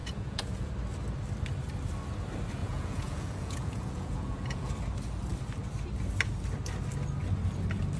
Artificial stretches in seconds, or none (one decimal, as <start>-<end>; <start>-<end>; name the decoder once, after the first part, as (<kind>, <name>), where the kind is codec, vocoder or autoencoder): 0.0-0.7 (vocoder, Vocos); 2.6-4.7